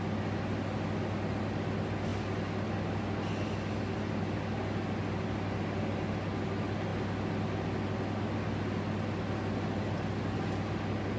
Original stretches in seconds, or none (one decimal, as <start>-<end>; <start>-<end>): 0.0-11.2